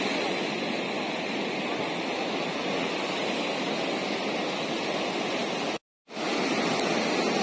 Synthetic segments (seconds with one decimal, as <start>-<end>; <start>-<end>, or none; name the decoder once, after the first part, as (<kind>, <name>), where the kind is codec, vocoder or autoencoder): none